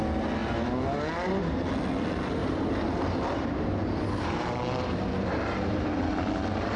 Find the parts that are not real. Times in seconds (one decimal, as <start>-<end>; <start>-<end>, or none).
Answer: 2.4-6.0